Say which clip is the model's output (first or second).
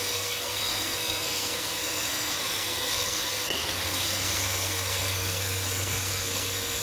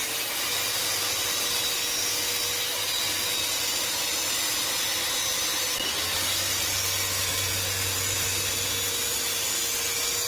first